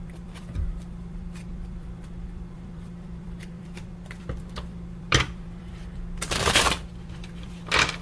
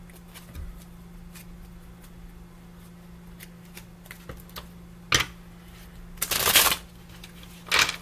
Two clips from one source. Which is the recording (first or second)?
second